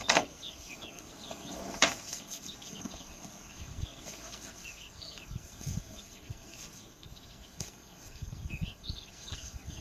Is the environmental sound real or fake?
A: fake